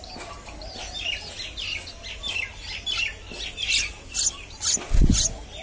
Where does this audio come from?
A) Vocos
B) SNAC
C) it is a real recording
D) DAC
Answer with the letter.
C